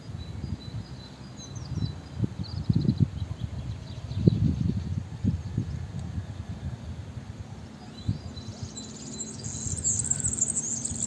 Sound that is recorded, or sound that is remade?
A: recorded